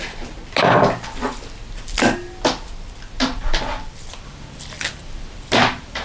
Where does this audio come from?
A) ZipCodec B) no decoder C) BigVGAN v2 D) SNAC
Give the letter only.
C